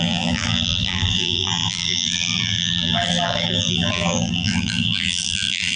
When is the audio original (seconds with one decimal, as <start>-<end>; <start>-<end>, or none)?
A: none